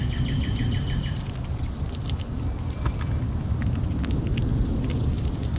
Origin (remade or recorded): recorded